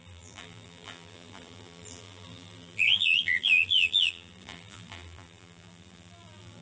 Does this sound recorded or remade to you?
remade